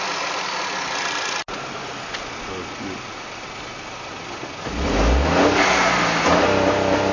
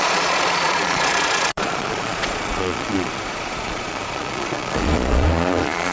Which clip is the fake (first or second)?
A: second